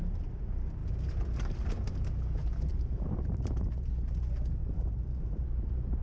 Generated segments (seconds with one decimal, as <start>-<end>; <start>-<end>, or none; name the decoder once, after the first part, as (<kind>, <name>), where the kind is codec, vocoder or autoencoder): 0.8-1.7 (vocoder, BigVGAN v2); 2.4-3.9; 4.6-5.4

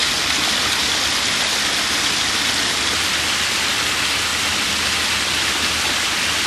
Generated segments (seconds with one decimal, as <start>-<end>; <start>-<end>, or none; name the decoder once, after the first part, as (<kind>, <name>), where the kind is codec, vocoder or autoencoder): 4.3-6.5 (vocoder, BigVGAN v2)